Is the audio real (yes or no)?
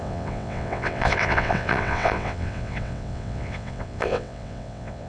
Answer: no